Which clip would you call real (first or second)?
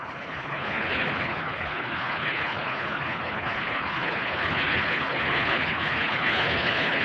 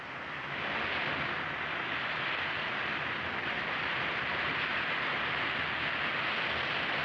second